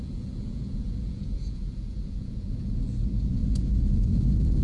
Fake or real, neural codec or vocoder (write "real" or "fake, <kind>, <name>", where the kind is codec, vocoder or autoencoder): fake, vocoder, Vocos